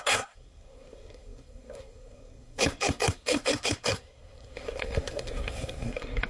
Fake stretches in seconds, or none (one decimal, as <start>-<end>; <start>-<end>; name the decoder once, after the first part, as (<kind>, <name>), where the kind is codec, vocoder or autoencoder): 0.0-6.3 (codec, SNAC)